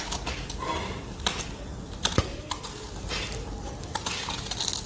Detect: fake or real real